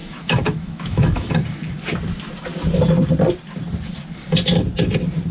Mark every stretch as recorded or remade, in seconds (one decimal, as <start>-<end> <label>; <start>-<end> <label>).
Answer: 0.0-1.3 remade; 1.3-5.3 recorded